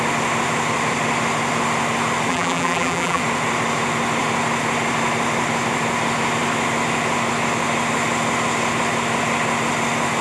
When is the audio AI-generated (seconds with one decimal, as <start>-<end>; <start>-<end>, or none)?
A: 2.3-3.2